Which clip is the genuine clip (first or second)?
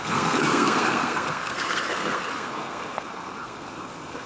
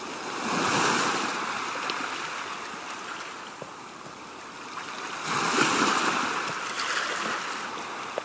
second